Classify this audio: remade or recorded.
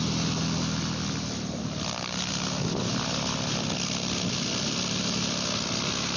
recorded